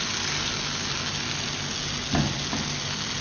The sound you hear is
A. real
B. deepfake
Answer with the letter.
A